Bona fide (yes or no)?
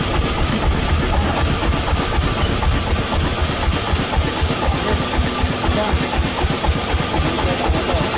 yes